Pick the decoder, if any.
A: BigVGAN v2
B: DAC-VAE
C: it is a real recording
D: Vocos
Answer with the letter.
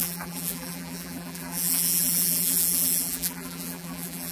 A